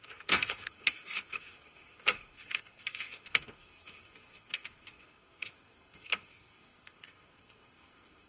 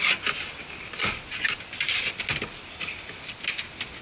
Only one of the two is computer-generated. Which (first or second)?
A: first